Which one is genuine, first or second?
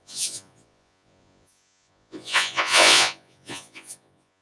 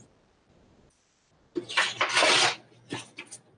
second